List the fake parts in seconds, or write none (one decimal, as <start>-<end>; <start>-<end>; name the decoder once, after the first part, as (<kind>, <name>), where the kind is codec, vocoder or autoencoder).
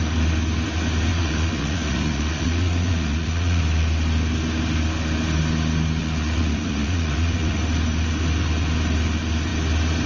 1.1-3.6 (vocoder, Vocos); 6.0-7.6